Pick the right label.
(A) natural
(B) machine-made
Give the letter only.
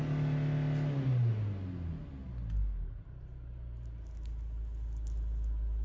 A